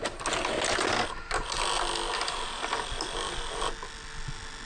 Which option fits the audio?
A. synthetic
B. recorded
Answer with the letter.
B